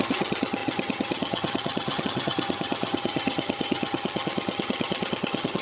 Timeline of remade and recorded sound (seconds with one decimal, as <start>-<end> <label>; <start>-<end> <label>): 0.0-5.6 remade